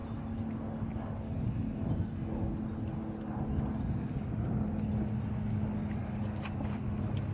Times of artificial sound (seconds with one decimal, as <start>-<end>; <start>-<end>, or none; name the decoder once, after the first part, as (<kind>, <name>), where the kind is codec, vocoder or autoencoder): none